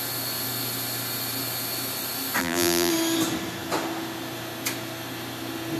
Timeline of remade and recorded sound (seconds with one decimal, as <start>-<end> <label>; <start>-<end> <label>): 0.0-2.4 recorded; 2.4-2.9 remade; 2.9-5.8 recorded

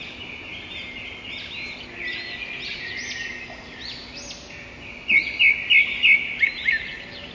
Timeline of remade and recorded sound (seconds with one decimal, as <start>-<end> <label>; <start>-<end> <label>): 0.0-7.3 recorded

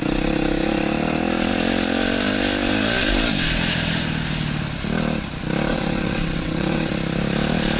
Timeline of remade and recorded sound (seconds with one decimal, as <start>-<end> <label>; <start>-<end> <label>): 0.0-5.7 recorded; 5.7-6.9 remade; 6.9-7.8 recorded

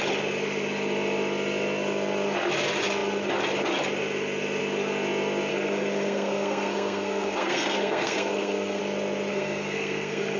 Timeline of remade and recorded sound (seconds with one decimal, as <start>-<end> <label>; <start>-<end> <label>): 0.0-5.5 recorded; 5.5-8.8 remade; 8.8-9.3 recorded; 9.3-10.4 remade

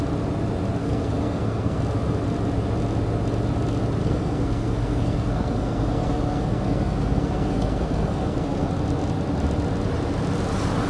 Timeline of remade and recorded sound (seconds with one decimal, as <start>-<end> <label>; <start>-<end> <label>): 0.0-0.8 recorded; 0.8-1.8 remade; 1.8-4.0 recorded; 4.0-8.7 remade; 8.7-10.9 recorded

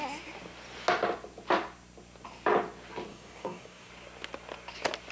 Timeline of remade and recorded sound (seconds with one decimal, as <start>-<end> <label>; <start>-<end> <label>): 0.0-3.1 recorded; 3.1-3.9 remade; 3.9-5.1 recorded

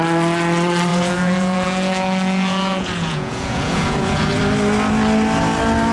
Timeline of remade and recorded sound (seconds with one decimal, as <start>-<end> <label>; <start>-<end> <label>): 0.0-0.9 recorded; 0.9-4.4 remade; 4.4-5.9 recorded

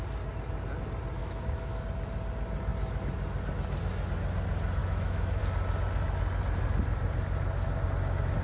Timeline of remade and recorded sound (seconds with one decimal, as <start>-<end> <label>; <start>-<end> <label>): 0.0-1.2 recorded; 1.2-1.8 remade; 1.8-4.8 recorded; 4.8-5.4 remade; 5.4-8.4 recorded